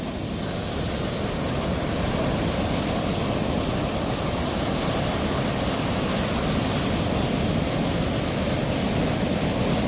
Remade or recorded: recorded